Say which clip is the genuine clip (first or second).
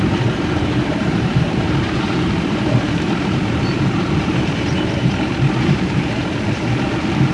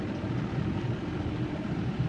second